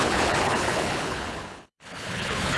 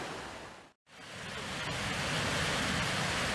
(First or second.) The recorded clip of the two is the second